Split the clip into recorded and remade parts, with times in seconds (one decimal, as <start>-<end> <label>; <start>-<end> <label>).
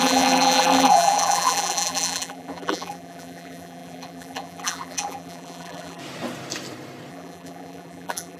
0.0-6.0 remade; 6.0-7.1 recorded; 7.1-8.4 remade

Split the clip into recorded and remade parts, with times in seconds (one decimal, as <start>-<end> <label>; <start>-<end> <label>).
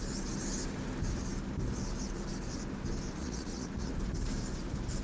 0.0-3.2 recorded; 3.2-3.9 remade; 3.9-5.0 recorded